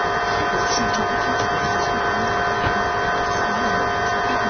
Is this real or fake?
real